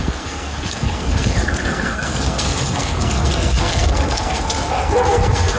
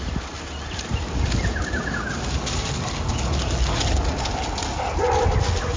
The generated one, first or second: first